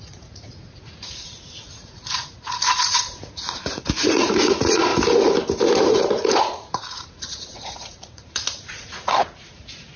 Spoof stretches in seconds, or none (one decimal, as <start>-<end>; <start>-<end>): 0.0-4.9; 6.1-10.0